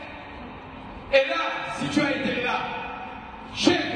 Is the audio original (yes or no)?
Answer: yes